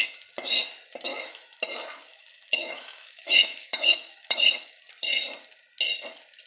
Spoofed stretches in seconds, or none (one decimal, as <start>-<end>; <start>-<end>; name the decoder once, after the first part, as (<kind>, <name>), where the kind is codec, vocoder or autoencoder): 1.1-1.7 (autoencoder, DAC-VAE); 2.1-4.8